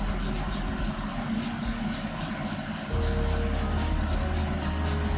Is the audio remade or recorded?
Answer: recorded